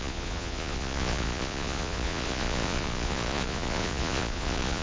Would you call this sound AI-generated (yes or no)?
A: yes